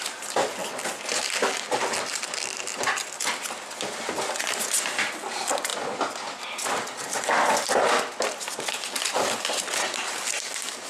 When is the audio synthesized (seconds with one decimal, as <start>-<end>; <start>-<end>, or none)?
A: none

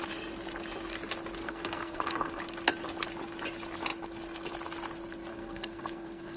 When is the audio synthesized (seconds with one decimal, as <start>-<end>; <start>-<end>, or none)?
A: 1.4-2.4; 5.3-6.4

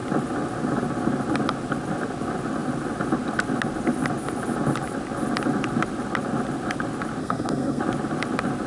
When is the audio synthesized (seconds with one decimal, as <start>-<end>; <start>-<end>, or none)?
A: 7.2-7.8

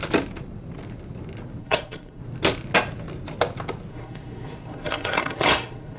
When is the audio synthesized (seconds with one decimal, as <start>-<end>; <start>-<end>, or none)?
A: 1.6-2.2; 3.9-6.0